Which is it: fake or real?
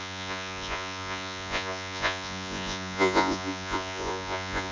fake